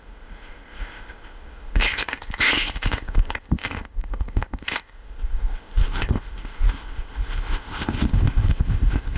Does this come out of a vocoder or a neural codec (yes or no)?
yes